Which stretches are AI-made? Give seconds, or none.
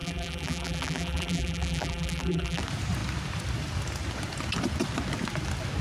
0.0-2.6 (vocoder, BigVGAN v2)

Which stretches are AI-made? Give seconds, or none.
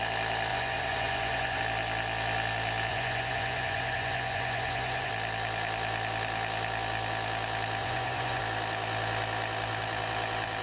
0.5-1.6 (vocoder, Vocos); 2.9-5.1; 7.8-8.4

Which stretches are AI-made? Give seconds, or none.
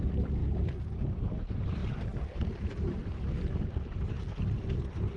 0.4-1.0 (vocoder, BigVGAN v2); 1.8-3.0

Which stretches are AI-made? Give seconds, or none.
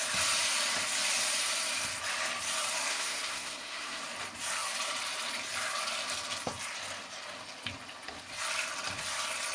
2.9-4.0 (codec, SNAC)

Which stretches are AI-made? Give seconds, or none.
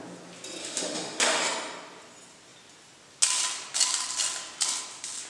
0.6-1.4 (autoencoder, DAC-VAE)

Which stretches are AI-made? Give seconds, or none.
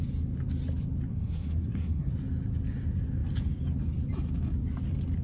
1.1-2.1 (codec, SNAC)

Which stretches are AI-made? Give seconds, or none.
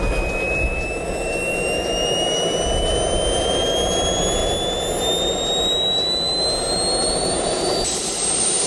7.0-8.7 (vocoder, BigVGAN v2)